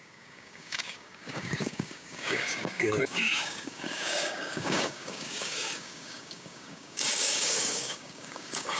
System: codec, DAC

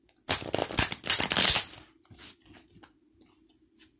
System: none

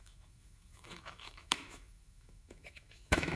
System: autoencoder, DAC-VAE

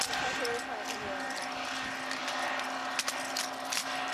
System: none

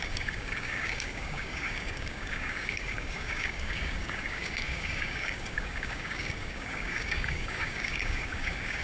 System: codec, DAC